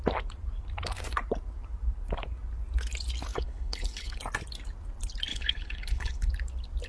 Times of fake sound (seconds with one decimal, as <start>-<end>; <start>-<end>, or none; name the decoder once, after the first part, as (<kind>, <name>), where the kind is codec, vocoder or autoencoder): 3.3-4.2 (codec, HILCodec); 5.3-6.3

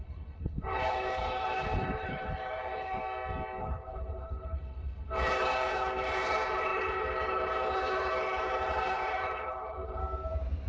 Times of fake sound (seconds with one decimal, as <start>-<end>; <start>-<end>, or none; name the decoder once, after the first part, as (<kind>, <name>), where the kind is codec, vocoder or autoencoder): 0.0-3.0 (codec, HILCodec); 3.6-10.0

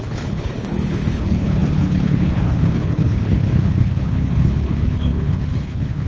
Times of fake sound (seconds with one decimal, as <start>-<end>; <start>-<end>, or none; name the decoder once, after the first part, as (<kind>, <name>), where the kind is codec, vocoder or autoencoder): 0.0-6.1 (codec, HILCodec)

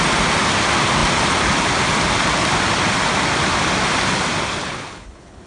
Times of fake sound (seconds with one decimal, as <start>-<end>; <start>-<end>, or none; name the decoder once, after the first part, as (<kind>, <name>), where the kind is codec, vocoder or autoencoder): 4.6-5.5 (codec, HILCodec)

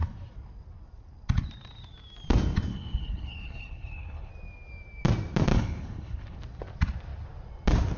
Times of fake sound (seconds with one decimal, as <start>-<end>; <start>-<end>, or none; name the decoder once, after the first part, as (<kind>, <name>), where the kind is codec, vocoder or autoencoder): 2.7-4.3 (codec, HILCodec); 5.5-6.4